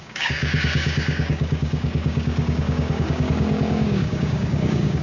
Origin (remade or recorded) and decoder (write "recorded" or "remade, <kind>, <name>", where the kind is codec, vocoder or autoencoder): remade, codec, DAC